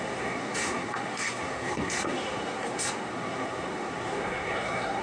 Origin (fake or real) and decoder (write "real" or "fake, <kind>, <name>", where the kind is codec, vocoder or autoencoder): fake, codec, SNAC